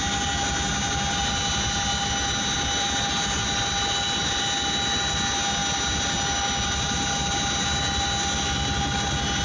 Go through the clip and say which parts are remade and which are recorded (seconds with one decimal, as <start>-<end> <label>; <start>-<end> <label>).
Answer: 0.0-9.4 recorded